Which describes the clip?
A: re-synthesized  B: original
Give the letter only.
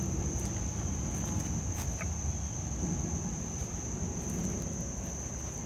B